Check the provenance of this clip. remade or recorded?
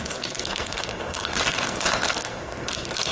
remade